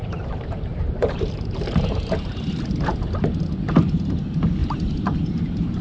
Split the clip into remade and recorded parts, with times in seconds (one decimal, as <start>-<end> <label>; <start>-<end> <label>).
0.0-2.4 remade; 2.4-4.6 recorded; 4.6-5.8 remade